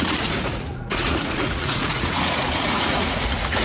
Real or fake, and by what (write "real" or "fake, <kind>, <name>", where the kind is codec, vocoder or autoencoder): fake, vocoder, Vocos